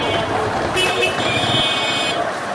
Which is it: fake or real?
real